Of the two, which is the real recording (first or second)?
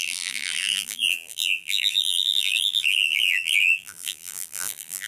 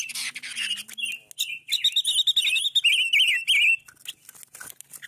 second